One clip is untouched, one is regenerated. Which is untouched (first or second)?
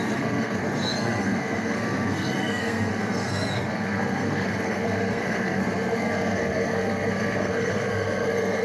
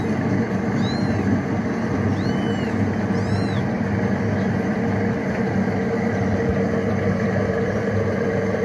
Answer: second